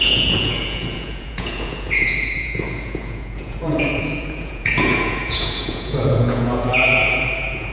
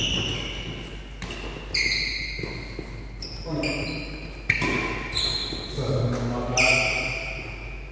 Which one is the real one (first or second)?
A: second